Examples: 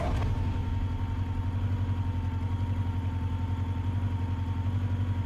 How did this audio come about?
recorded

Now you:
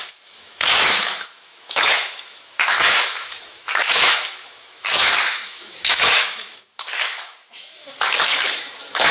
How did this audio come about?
remade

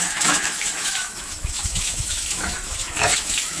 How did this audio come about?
remade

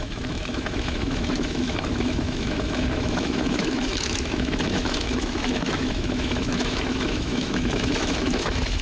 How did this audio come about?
remade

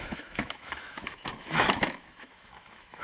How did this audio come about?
remade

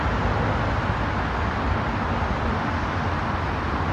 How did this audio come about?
recorded